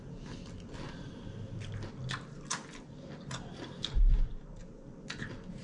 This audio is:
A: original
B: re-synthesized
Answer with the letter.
A